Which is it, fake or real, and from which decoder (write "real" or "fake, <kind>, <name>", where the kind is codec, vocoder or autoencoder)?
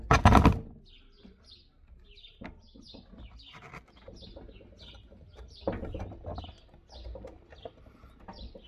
real